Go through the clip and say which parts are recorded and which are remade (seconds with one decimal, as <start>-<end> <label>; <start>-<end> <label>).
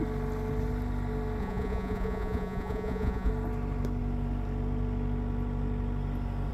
0.0-1.4 recorded; 1.4-3.3 remade; 3.3-6.5 recorded